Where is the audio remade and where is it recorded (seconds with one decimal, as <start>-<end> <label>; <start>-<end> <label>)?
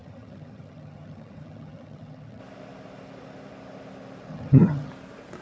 0.0-2.4 remade; 2.4-4.3 recorded; 4.3-4.9 remade; 4.9-5.4 recorded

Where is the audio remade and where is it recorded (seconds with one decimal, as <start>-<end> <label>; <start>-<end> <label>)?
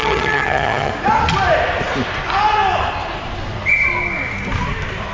0.0-0.9 remade; 0.9-5.1 recorded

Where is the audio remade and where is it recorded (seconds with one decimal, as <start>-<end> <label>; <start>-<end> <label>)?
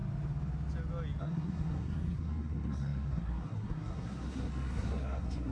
0.0-1.2 recorded; 1.2-5.5 remade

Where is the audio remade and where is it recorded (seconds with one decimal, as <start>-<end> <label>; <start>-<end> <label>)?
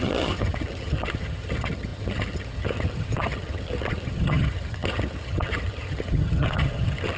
0.0-7.2 remade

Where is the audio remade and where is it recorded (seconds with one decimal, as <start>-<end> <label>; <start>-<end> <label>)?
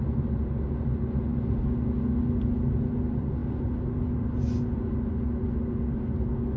0.0-6.6 recorded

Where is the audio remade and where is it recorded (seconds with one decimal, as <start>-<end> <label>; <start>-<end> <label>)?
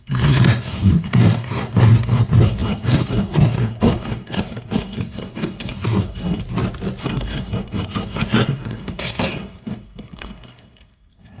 0.0-6.4 remade; 6.4-7.0 recorded; 7.0-11.4 remade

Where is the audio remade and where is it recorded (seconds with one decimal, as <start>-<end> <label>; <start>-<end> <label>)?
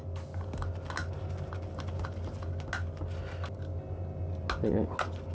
0.0-5.3 recorded